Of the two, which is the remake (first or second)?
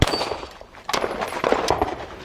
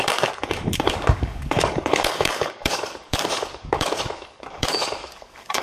second